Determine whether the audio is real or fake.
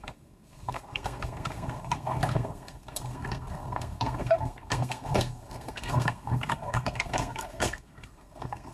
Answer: fake